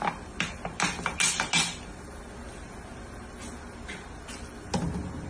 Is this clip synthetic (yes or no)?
no